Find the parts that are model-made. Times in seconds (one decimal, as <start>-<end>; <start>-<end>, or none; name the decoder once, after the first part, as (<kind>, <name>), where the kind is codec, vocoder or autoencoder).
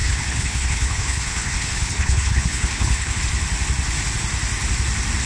0.0-3.2 (codec, HILCodec)